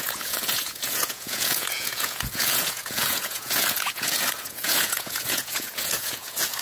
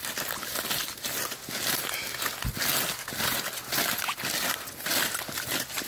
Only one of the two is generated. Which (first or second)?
first